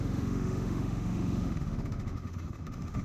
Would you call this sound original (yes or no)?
no